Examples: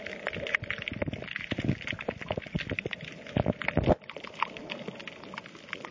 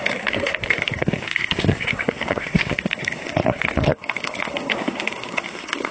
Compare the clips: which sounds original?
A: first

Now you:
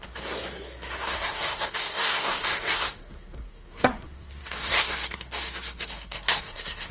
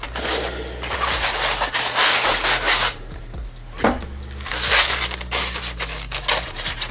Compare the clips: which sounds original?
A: second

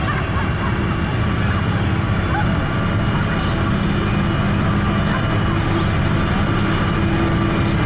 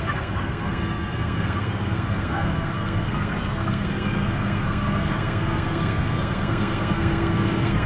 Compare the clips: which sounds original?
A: first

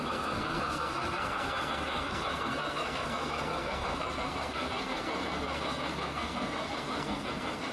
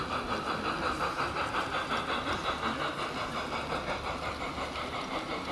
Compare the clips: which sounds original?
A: second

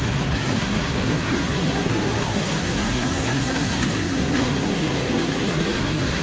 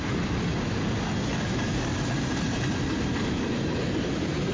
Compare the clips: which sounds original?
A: second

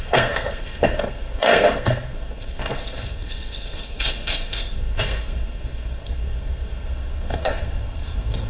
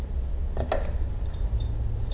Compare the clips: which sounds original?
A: second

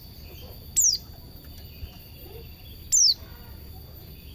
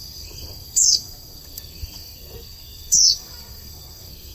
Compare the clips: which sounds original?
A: first